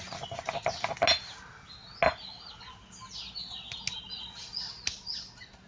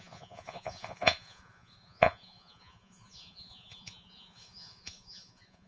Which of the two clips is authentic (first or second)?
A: first